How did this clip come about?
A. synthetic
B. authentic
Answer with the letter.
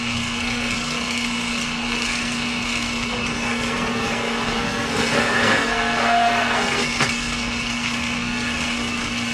A